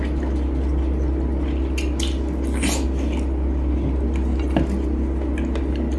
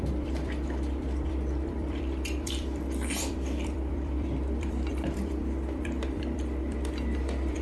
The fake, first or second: second